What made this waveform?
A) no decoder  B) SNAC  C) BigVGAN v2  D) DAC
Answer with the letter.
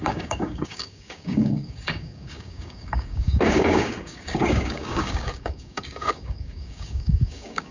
D